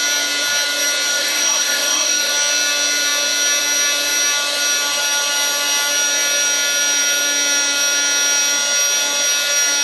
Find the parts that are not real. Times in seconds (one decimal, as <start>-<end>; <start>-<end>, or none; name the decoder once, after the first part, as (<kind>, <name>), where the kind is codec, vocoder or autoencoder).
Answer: 1.1-2.3 (autoencoder, DAC-VAE)